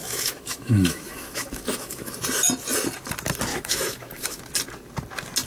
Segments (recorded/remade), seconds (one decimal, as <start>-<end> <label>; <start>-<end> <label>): 0.0-2.1 remade; 2.1-3.5 recorded; 3.5-4.4 remade; 4.4-5.5 recorded